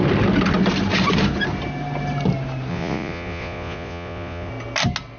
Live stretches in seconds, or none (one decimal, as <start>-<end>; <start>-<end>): 0.0-2.7; 4.5-5.2